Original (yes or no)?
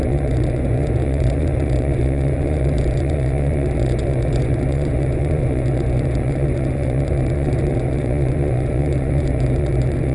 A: no